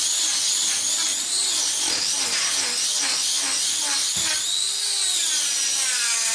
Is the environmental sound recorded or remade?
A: recorded